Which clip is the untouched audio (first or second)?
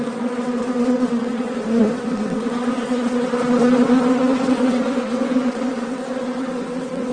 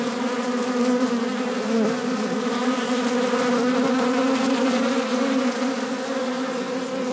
second